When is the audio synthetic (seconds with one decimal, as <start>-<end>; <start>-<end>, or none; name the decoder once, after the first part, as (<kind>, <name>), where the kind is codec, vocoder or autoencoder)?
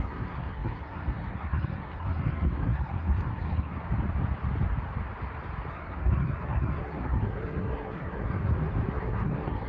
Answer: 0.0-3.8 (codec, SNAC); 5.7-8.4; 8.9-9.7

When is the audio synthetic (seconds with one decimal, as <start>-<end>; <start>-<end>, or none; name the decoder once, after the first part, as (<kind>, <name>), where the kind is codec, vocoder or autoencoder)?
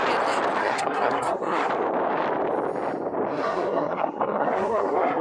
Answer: 0.6-1.7 (codec, SNAC); 3.3-5.2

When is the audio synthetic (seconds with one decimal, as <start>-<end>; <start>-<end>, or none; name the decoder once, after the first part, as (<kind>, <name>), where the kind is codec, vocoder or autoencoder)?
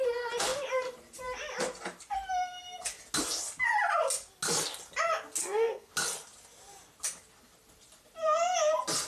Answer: 5.4-5.9 (codec, SNAC)